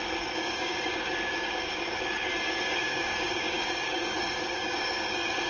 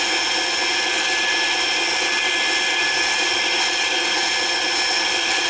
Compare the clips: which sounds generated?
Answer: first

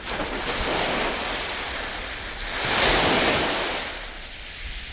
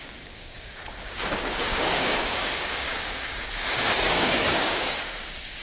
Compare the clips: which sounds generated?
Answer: second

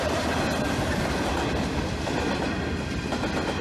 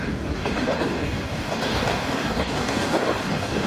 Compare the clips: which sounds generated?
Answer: second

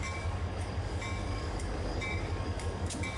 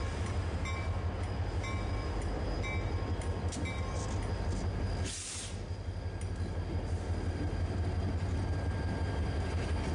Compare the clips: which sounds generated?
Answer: first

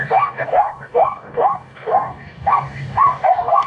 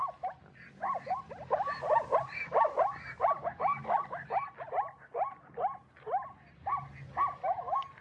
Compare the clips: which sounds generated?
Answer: first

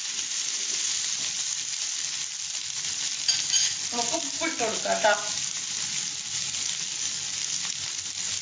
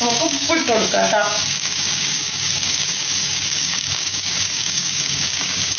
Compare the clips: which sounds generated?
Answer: second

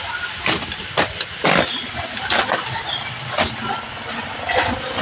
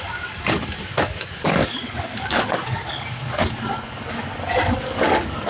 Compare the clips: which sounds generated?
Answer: second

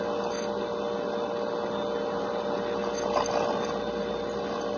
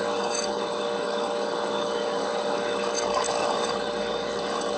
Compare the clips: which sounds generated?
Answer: second